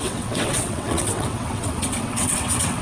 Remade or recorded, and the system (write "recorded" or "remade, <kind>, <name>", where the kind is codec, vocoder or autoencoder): remade, vocoder, WaveNeXt